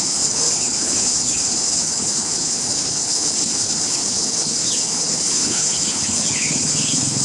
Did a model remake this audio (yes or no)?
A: yes